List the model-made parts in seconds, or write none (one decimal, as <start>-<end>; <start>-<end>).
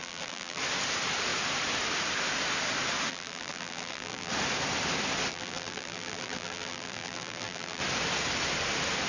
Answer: 0.0-0.6; 3.1-4.3; 5.3-7.8